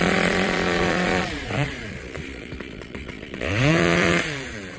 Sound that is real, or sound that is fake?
fake